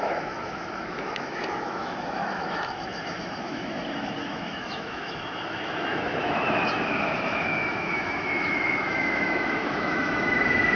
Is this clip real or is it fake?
fake